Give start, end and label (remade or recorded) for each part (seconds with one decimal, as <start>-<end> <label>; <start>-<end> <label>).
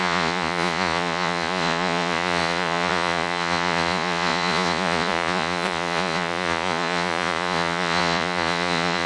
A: 0.0-9.1 remade